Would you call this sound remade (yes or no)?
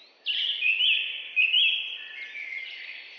no